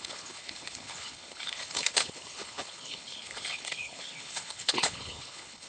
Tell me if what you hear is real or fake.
fake